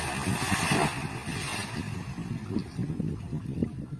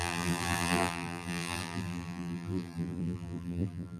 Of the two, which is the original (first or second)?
first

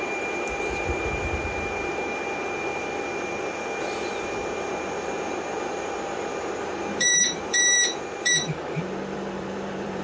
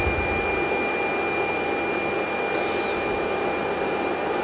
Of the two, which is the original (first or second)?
second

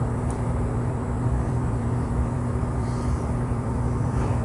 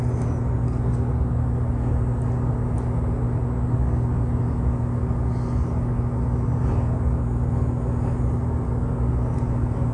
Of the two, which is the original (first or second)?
second